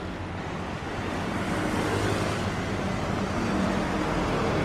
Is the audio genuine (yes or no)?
yes